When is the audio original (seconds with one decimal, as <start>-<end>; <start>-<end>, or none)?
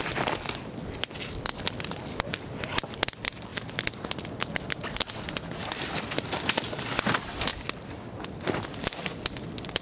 0.0-9.8